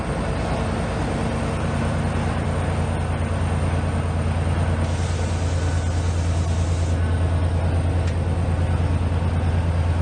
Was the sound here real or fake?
real